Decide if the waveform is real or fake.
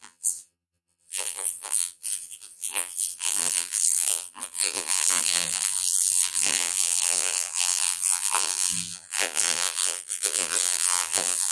fake